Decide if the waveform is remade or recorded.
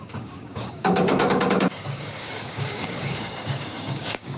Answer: remade